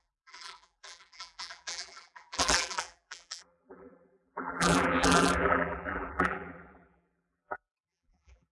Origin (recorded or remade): remade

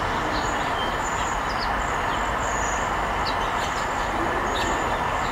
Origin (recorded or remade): recorded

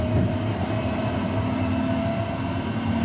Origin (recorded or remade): recorded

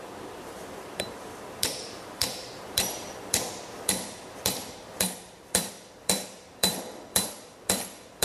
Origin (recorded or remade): remade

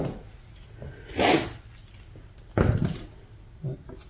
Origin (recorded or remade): recorded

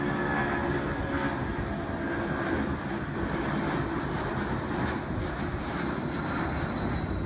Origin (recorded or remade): recorded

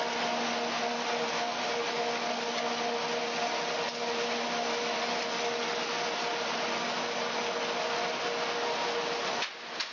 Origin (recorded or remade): recorded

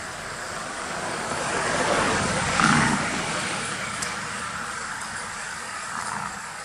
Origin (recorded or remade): remade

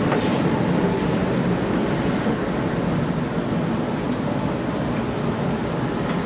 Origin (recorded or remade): recorded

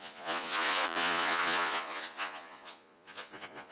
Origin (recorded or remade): remade